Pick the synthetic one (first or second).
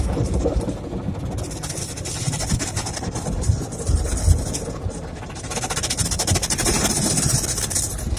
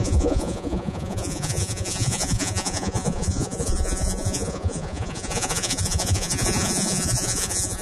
second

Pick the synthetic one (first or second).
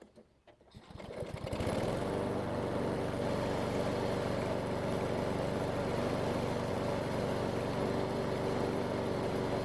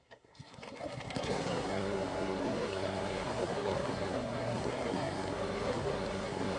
second